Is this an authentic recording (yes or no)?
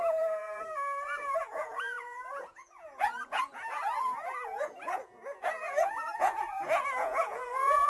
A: no